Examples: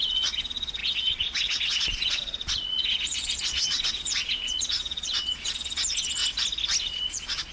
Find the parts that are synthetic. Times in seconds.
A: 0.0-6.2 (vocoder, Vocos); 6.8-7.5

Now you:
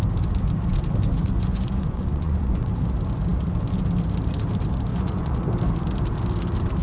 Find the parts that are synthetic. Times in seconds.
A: 1.1-2.7 (vocoder, Vocos); 4.9-5.4

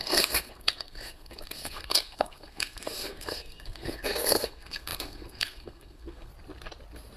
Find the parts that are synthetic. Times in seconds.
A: 0.0-6.3 (codec, SNAC)

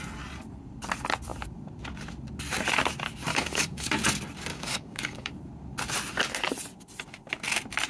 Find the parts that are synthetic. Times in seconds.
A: 3.3-3.9 (codec, DAC); 4.5-5.3